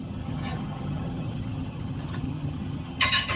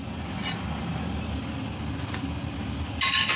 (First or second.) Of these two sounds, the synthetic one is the first